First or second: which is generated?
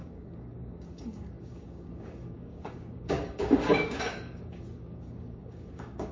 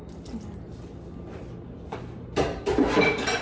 first